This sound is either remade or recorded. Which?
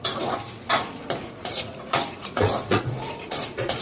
remade